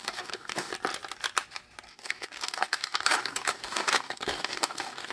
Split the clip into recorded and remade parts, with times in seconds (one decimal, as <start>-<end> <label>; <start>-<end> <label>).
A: 0.0-0.7 remade; 0.7-1.9 recorded; 1.9-5.1 remade